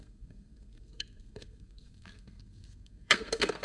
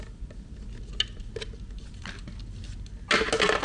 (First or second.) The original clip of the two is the second